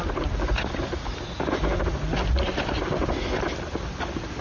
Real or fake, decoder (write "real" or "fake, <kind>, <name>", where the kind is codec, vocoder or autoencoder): real